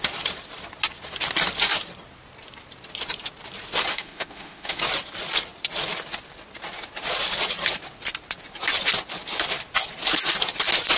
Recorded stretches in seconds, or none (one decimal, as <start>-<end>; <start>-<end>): 0.0-3.9; 4.8-11.0